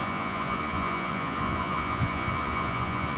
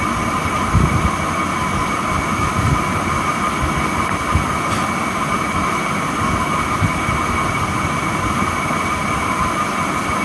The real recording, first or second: second